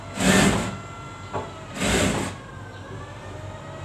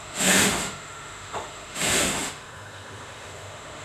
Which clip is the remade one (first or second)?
second